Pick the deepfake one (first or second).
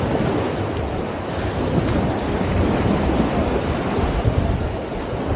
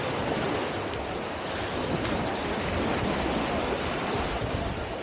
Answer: first